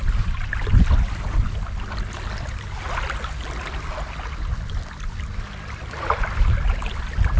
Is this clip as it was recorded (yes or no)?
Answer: yes